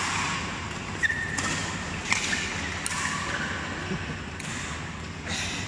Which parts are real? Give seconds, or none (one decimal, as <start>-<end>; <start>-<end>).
0.0-5.7